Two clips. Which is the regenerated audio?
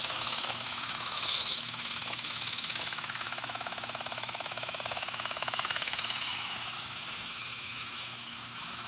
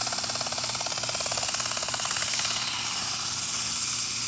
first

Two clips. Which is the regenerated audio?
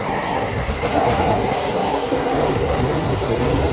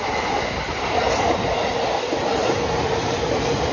first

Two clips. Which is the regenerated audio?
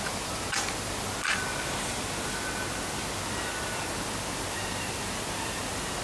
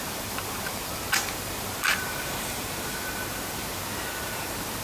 second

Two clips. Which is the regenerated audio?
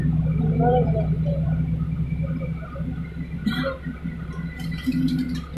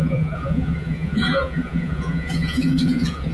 second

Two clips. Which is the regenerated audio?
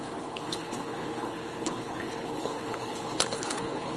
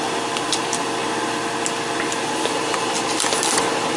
first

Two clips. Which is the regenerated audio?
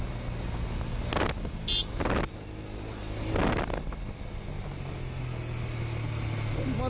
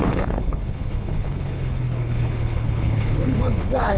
second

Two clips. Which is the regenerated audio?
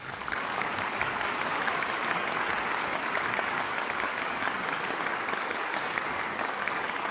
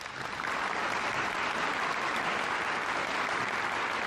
first